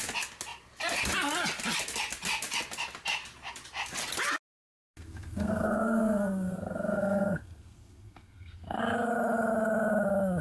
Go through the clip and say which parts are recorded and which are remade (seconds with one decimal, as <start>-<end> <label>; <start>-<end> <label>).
0.0-4.8 recorded; 4.8-8.8 remade; 8.8-10.4 recorded